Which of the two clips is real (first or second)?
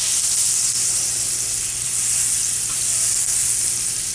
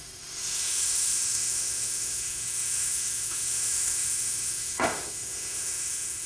first